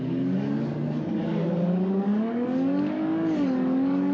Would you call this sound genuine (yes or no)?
no